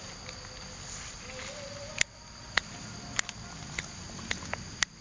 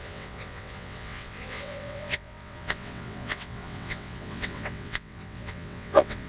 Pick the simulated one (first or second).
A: second